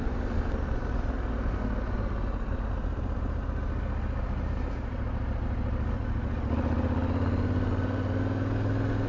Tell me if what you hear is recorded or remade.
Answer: recorded